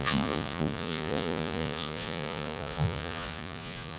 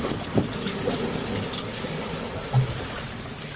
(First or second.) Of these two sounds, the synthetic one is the first